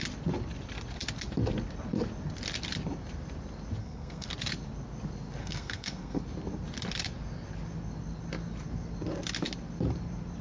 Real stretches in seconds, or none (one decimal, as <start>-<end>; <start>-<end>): 0.0-3.8; 4.3-5.4; 6.2-10.4